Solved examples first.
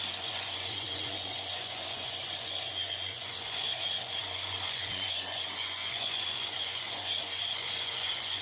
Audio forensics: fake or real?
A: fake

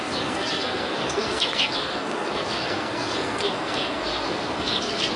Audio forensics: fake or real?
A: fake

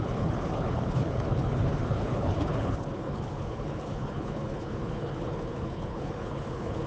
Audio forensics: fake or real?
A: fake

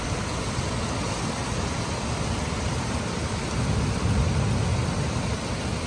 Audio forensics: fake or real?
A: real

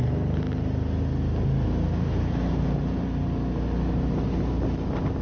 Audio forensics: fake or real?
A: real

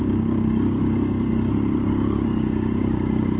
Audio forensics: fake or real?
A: fake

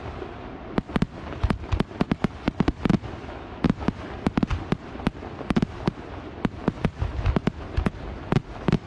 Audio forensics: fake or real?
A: real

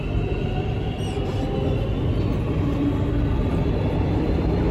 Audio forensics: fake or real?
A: real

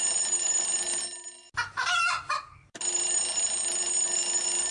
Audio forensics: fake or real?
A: real